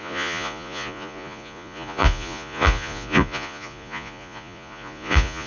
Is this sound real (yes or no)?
no